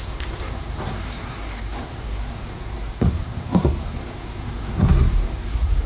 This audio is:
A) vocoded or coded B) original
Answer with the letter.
A